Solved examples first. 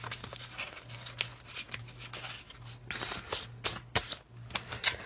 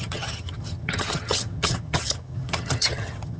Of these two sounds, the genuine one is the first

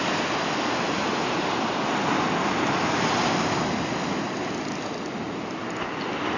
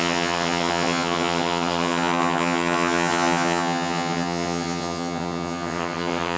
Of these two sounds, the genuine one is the first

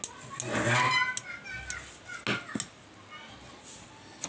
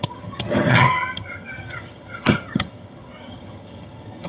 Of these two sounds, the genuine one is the first